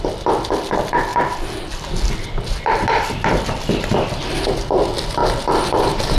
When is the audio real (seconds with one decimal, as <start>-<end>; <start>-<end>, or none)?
0.0-6.2